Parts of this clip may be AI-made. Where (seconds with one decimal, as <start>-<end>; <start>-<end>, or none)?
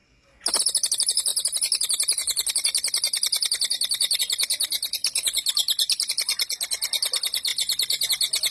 0.0-0.6; 5.0-6.1